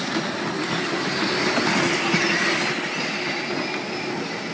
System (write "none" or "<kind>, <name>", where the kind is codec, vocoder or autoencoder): none